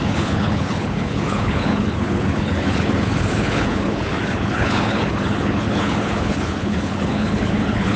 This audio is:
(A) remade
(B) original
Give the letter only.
A